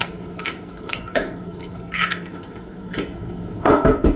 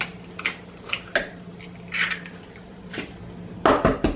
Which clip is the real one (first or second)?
second